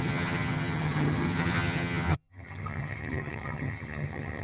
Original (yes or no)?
no